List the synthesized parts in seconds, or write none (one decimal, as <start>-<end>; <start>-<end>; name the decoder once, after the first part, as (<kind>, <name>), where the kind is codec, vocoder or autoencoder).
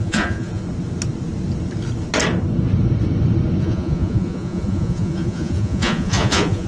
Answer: 0.0-0.6 (vocoder, Vocos); 3.6-6.7